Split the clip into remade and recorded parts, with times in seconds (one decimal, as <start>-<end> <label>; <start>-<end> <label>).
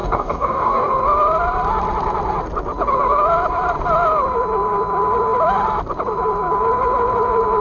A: 0.0-0.9 remade; 0.9-7.6 recorded